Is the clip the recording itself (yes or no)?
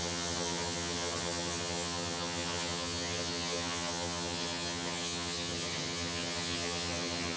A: no